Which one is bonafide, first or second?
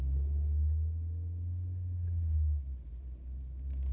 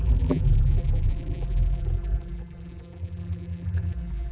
first